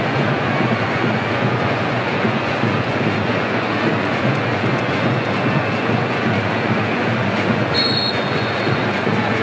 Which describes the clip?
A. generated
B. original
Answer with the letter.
A